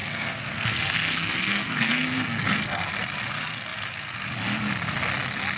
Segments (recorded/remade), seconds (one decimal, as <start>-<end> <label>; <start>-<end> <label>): 0.0-2.9 remade; 2.9-5.6 recorded